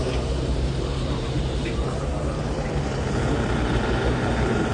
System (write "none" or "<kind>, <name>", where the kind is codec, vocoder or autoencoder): vocoder, BigVGAN v2